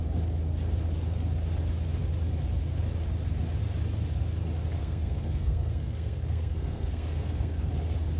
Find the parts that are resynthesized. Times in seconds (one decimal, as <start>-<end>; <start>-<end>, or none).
4.8-7.7

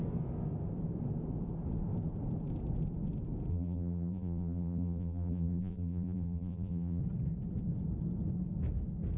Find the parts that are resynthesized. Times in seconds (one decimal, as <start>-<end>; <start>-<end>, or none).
3.5-7.0